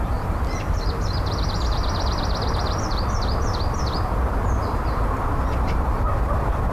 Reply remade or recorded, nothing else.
remade